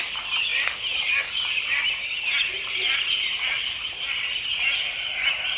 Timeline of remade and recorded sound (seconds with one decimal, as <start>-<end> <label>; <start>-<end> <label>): 0.0-5.6 recorded